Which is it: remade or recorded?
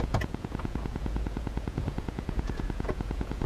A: remade